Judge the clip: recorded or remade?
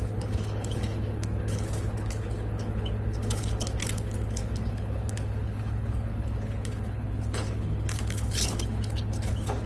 remade